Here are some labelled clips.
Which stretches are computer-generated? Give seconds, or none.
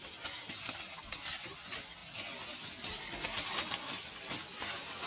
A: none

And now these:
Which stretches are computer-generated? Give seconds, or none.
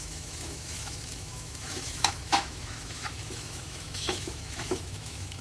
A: 0.0-5.4 (autoencoder, DAC-VAE)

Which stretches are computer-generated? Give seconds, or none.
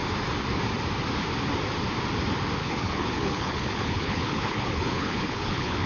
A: 2.6-5.9 (codec, HILCodec)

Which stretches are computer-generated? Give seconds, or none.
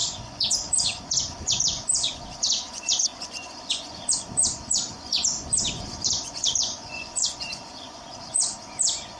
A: 0.0-9.2 (vocoder, Vocos)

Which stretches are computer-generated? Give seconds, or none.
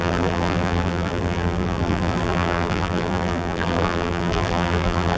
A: 0.0-5.2 (vocoder, BigVGAN v2)